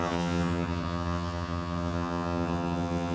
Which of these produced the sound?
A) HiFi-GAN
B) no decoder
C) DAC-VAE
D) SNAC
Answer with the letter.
A